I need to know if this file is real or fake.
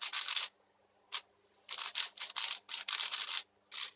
real